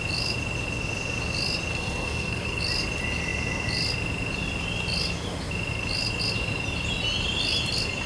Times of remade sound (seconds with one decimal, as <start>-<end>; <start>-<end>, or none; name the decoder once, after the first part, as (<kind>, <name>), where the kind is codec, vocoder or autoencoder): 1.7-2.6 (codec, SNAC)